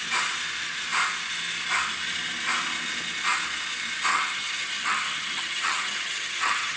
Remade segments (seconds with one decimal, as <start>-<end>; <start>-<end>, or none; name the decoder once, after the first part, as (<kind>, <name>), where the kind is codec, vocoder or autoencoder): 4.1-6.8 (vocoder, HiFi-GAN)